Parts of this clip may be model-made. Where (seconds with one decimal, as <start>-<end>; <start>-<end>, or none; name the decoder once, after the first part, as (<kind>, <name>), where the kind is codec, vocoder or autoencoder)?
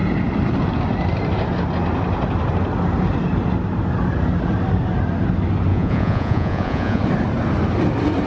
5.7-7.0 (vocoder, Vocos)